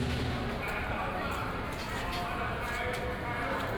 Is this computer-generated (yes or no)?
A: no